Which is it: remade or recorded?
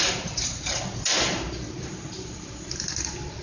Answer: recorded